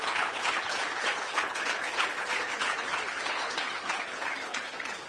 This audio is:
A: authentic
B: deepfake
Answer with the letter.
B